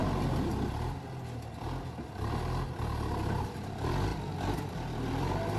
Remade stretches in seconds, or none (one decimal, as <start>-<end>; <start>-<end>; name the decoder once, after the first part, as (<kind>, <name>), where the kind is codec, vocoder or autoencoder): 3.4-5.6 (vocoder, BigVGAN v2)